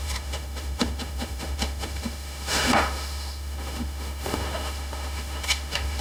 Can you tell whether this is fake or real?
fake